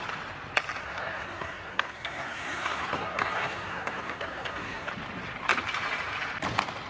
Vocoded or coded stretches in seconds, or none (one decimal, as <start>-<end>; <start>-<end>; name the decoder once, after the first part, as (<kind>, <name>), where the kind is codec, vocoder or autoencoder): 0.8-4.9 (codec, SNAC)